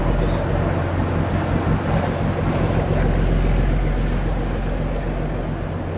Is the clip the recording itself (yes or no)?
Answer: yes